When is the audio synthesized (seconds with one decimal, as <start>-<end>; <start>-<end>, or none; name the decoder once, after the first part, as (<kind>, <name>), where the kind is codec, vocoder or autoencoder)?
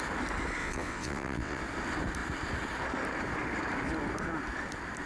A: 0.6-1.6 (vocoder, WaveNeXt)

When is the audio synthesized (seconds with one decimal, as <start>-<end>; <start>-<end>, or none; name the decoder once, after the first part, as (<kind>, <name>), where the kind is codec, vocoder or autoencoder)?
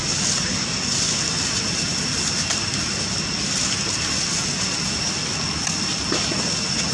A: none